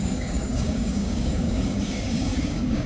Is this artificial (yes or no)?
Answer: yes